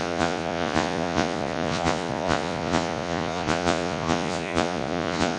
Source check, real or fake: fake